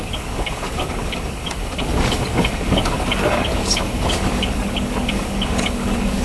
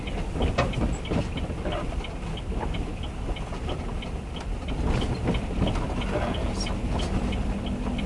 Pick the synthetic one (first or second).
first